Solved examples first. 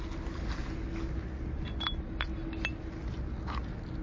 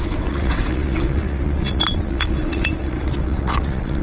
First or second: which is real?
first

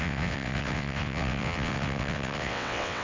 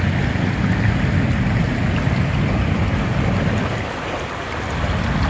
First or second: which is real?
second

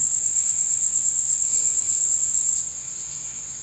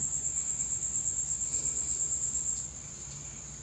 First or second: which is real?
second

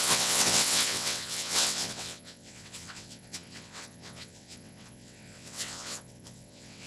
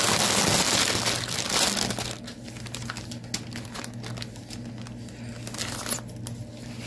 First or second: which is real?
second